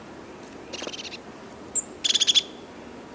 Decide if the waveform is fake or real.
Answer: real